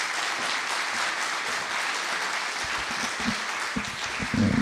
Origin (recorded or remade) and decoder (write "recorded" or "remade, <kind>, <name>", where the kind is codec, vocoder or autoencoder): recorded